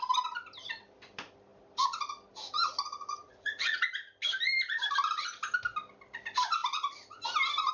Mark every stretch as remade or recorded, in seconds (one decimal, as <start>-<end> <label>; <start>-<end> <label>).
0.0-3.2 recorded; 3.2-3.9 remade; 3.9-7.7 recorded